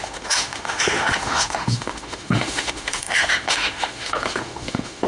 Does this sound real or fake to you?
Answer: fake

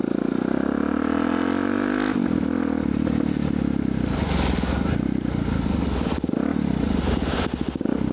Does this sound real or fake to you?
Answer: real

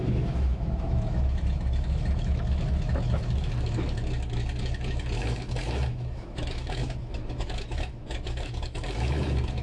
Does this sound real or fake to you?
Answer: fake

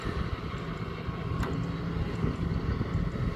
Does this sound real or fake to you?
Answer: real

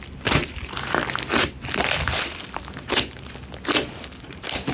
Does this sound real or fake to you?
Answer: real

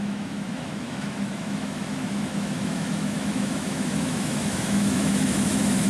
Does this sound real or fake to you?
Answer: fake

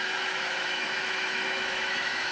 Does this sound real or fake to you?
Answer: fake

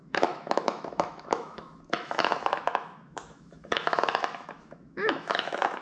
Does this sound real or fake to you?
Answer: fake